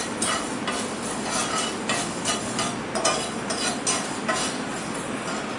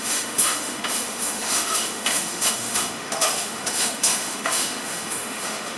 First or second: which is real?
first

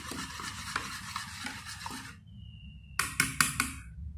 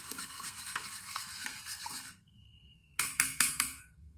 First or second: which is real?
first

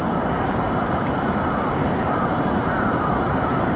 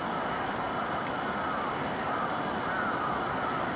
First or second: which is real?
second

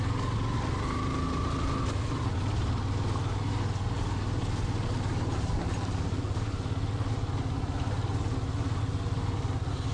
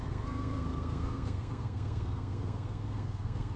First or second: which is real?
first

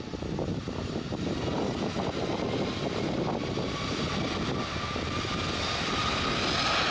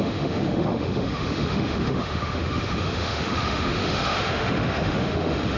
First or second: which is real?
first